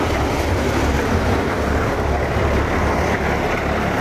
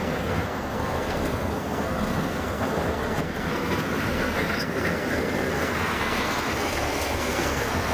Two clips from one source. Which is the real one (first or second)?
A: first